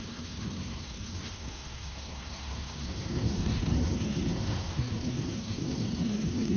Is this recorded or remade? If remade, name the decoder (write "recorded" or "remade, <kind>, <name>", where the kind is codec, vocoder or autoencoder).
remade, codec, SNAC